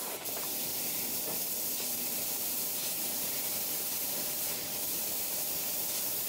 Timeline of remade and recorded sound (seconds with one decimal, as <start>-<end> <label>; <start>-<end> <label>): 0.0-0.7 remade; 0.7-1.9 recorded; 1.9-6.3 remade